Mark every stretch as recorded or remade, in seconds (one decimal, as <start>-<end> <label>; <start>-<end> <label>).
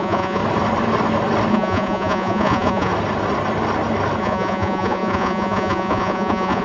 0.0-0.4 remade; 0.4-1.5 recorded; 1.5-2.9 remade; 2.9-4.2 recorded; 4.2-6.6 remade